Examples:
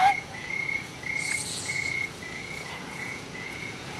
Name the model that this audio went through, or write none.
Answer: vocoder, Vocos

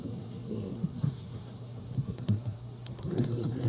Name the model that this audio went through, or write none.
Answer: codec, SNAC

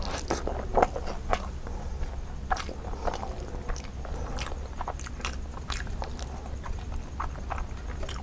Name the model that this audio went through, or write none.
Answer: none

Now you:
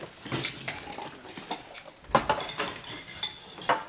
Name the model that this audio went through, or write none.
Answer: none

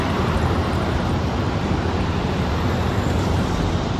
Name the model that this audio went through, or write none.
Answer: vocoder, BigVGAN v2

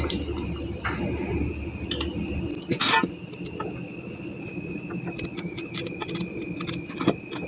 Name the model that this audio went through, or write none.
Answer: none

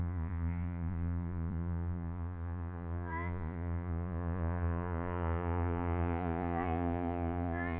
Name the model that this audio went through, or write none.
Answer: vocoder, Vocos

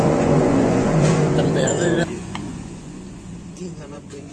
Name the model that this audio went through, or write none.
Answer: vocoder, Vocos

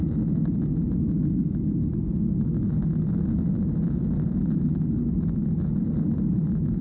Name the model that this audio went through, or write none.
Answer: none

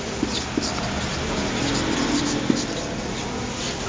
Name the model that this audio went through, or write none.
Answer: none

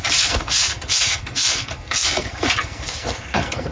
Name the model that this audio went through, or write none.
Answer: codec, SNAC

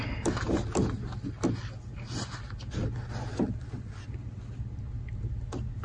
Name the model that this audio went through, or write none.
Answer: none